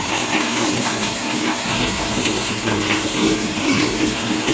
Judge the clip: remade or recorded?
remade